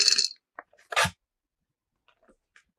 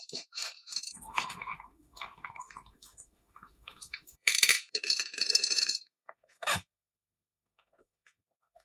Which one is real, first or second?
first